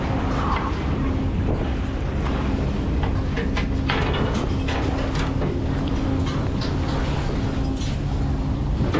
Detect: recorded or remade recorded